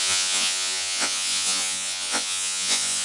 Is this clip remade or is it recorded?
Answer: remade